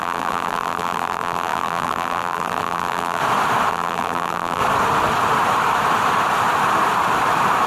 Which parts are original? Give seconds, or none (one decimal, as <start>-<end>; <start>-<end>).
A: 3.2-3.7; 4.6-7.7